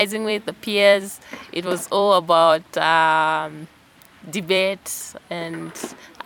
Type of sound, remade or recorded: remade